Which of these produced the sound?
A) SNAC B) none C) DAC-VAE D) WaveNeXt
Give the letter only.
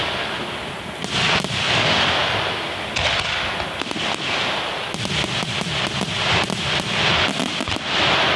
B